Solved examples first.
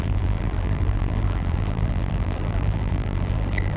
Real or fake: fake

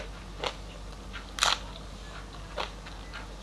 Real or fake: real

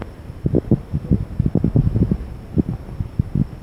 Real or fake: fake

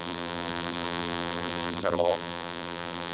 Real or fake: fake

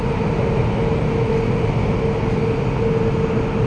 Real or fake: real